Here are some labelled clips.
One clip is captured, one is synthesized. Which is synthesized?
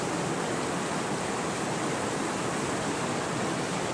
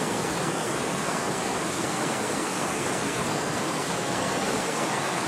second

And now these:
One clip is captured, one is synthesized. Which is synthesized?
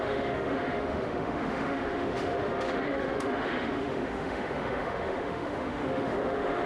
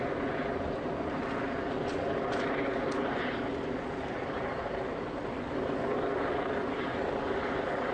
first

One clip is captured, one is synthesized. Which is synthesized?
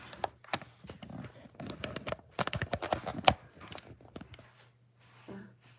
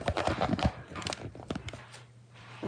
second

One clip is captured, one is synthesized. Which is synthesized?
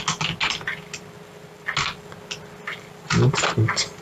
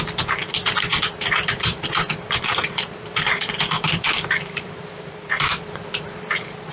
second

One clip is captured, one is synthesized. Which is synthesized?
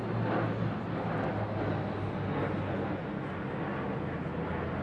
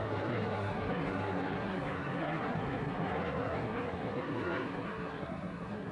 second